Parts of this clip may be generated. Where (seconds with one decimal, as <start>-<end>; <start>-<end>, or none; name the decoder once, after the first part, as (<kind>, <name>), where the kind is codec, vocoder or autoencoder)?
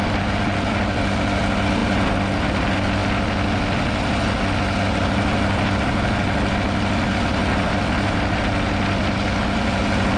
none